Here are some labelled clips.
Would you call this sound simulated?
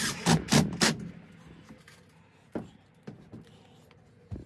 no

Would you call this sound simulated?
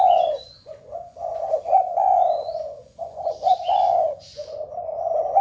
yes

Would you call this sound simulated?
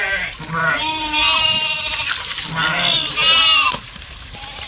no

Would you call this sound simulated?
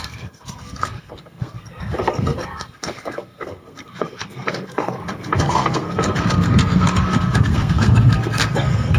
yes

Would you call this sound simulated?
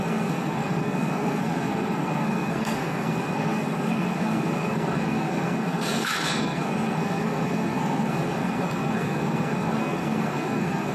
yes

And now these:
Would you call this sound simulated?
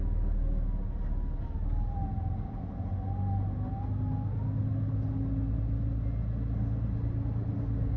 no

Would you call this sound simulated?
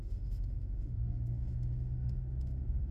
yes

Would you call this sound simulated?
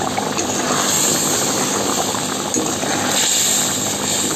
no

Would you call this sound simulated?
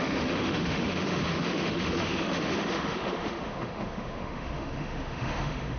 yes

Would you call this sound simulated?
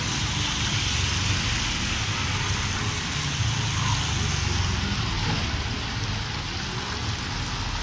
no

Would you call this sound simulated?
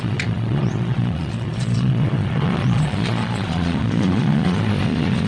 yes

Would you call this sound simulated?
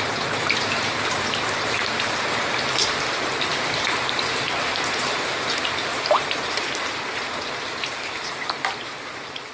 yes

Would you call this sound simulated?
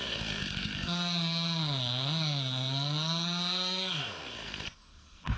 yes